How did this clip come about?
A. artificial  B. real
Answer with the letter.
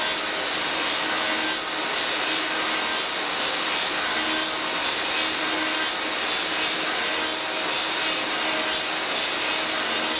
B